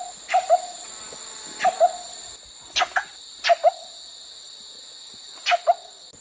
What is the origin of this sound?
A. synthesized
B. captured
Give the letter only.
B